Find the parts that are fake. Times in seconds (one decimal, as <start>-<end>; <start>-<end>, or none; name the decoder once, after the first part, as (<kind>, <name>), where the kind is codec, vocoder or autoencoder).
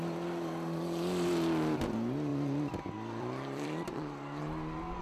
2.3-4.4 (vocoder, BigVGAN v2)